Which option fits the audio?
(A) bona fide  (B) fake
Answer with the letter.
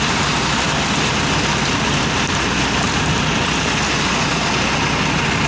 A